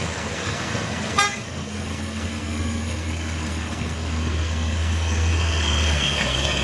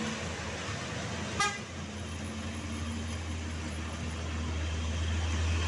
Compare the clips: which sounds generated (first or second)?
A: first